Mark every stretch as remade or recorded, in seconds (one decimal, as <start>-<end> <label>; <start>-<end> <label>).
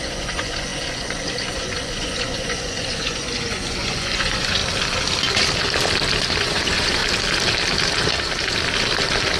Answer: 0.0-4.6 remade; 4.6-6.4 recorded; 6.4-7.0 remade; 7.0-9.4 recorded